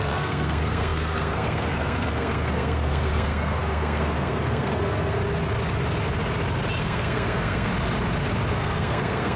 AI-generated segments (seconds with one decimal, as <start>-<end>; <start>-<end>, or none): 0.0-5.2; 6.8-7.7; 8.5-9.4